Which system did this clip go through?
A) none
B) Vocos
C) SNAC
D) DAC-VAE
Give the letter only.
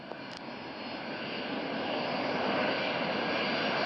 A